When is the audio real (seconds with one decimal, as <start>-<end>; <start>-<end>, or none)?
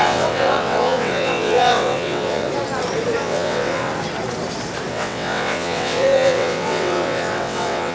2.5-3.2; 3.9-4.9